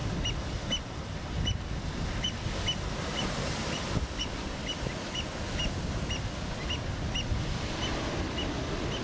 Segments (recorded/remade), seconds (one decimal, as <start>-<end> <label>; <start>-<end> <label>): 0.0-3.9 remade; 3.9-9.0 recorded